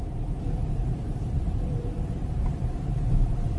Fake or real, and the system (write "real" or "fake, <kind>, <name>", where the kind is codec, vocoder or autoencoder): fake, vocoder, BigVGAN v2